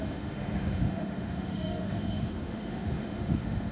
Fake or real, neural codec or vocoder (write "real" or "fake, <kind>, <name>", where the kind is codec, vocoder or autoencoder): fake, autoencoder, DAC-VAE